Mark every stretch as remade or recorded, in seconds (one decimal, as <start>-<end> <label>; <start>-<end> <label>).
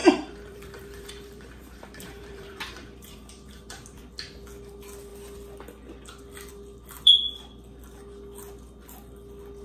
0.0-4.0 remade; 4.0-9.6 recorded